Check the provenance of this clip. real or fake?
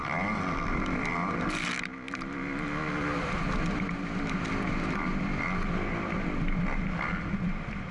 real